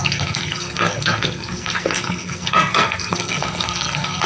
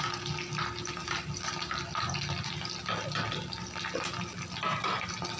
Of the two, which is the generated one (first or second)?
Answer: first